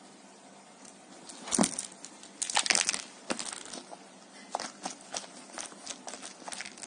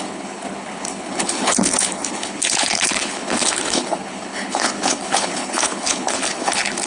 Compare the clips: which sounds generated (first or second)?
second